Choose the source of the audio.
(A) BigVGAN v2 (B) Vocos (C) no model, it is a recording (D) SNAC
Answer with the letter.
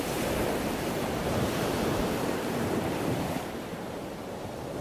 A